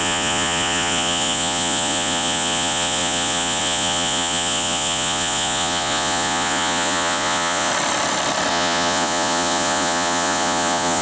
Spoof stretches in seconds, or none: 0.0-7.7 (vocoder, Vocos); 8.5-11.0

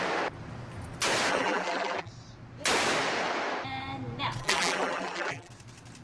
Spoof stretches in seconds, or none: 1.3-2.1 (vocoder, BigVGAN v2); 4.4-5.5

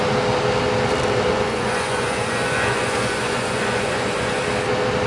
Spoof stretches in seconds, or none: 1.3-4.4 (vocoder, Vocos)

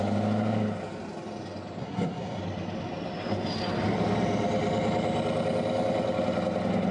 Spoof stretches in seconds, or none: 1.8-2.4 (codec, SNAC)

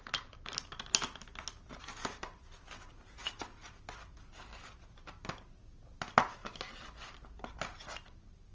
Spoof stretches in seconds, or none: none

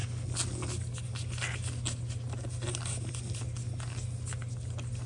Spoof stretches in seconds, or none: none

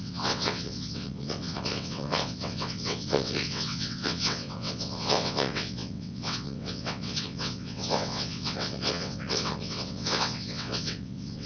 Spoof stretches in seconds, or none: 0.0-11.5 (vocoder, WaveNeXt)